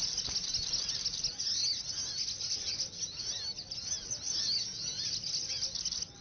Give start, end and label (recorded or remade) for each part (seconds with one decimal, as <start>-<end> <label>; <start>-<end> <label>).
0.0-6.2 recorded